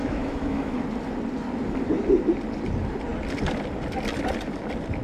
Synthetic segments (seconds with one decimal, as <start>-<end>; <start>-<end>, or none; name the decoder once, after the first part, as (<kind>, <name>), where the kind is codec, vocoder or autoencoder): 0.0-0.8 (autoencoder, DAC-VAE)